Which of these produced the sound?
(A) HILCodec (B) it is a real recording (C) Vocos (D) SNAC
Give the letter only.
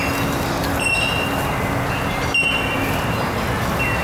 B